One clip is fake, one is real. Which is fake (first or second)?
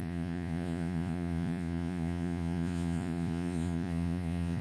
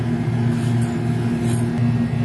first